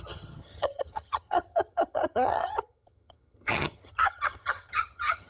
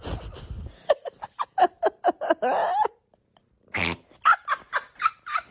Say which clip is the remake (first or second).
first